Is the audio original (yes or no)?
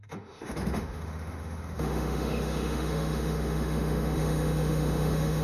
no